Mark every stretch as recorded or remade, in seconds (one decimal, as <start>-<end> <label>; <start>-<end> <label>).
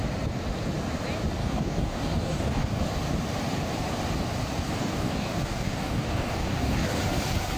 0.0-1.4 recorded; 1.4-2.8 remade; 2.8-4.8 recorded; 4.8-7.0 remade; 7.0-7.6 recorded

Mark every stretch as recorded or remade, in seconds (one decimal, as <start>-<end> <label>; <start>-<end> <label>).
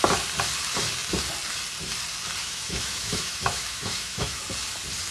0.0-2.4 recorded; 2.4-4.4 remade; 4.4-5.1 recorded